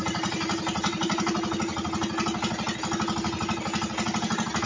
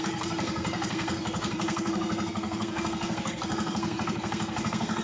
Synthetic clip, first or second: second